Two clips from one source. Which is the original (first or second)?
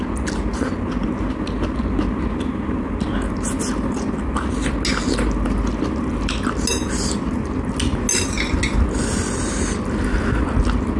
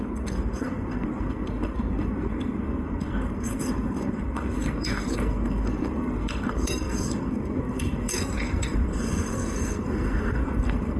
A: first